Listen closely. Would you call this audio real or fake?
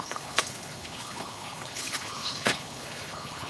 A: fake